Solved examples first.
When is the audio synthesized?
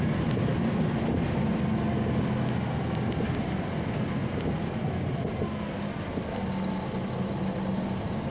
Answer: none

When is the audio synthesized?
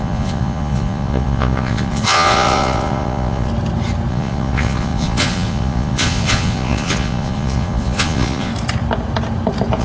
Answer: 0.0-3.5; 4.1-8.5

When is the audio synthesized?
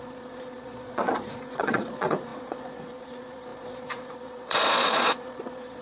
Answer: 0.0-5.8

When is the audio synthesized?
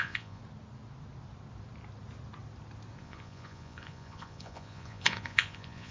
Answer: 0.0-0.4; 3.0-5.9